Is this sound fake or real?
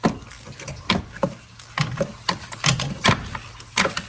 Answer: real